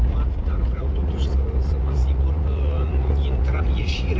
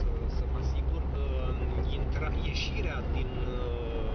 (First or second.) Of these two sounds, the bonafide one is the second